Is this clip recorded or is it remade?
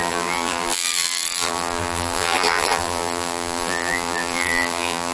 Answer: remade